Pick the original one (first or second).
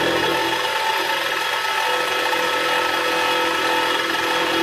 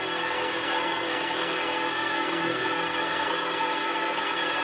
first